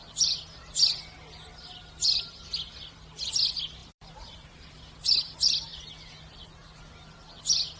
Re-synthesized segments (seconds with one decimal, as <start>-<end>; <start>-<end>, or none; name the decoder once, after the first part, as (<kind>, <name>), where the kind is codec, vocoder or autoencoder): 3.8-4.8 (vocoder, BigVGAN v2)

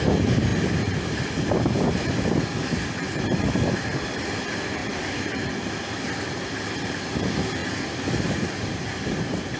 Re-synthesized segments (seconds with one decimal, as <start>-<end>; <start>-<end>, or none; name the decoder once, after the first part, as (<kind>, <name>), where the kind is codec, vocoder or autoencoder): 0.5-2.4 (vocoder, BigVGAN v2); 4.8-5.6; 7.6-9.6

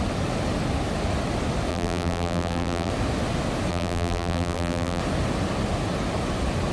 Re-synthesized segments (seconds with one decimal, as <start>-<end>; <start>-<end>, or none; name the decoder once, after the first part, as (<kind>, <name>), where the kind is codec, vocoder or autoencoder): 1.7-2.9 (vocoder, BigVGAN v2); 3.7-5.0

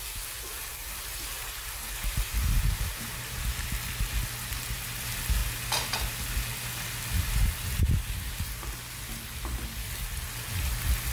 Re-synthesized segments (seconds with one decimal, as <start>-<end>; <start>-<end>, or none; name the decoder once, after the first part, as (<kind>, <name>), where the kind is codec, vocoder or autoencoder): 0.8-3.5 (vocoder, BigVGAN v2)

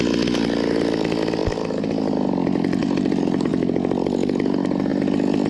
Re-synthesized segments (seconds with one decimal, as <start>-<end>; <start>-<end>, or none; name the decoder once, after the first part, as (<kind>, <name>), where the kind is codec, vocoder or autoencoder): 2.8-3.5 (vocoder, BigVGAN v2)

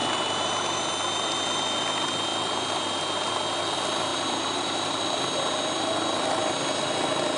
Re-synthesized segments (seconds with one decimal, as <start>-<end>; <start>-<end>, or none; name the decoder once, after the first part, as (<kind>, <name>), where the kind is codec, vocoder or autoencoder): 0.0-0.9 (vocoder, BigVGAN v2); 4.1-5.0